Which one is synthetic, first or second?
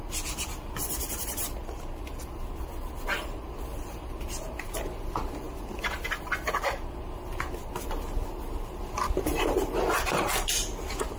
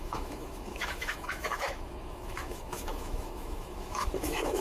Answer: second